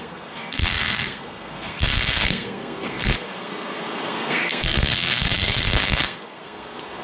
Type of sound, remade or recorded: remade